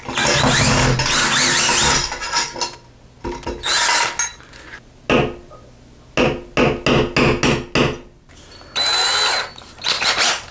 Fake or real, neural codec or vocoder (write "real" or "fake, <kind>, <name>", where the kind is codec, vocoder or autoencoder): real